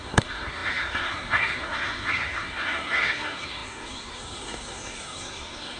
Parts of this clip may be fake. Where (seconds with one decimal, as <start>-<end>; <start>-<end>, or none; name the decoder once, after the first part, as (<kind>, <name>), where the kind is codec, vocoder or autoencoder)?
0.0-5.8 (codec, SNAC)